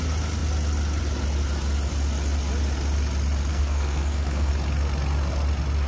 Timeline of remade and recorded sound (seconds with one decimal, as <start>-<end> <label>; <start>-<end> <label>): 0.0-3.5 recorded; 3.5-4.5 remade; 4.5-5.9 recorded